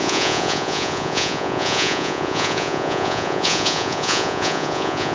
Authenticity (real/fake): fake